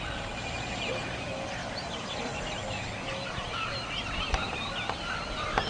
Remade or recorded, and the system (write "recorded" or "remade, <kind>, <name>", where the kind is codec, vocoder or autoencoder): recorded